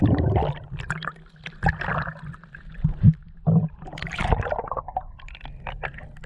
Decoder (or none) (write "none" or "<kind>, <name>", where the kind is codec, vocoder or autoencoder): none